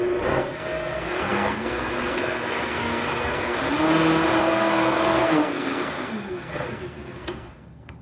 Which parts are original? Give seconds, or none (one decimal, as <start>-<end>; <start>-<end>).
3.6-4.4